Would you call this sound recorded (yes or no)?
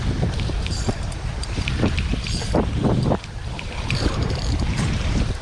no